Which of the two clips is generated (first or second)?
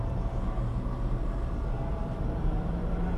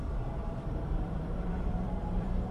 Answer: second